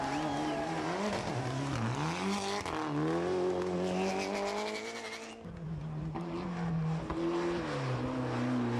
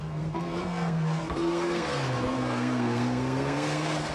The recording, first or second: first